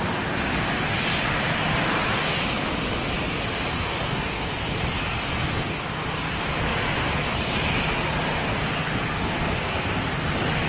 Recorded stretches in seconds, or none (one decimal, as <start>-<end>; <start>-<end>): 0.0-3.7; 4.3-10.7